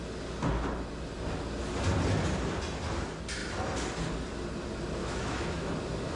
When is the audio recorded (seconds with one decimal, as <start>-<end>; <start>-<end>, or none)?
0.0-5.0; 5.7-6.2